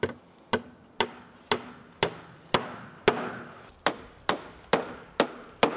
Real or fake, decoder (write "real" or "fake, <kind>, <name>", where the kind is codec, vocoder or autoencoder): real